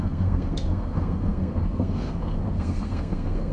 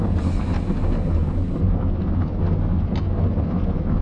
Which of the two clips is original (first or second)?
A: second